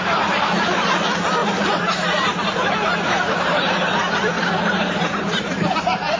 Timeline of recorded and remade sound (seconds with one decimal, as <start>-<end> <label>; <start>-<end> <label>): 0.0-6.2 recorded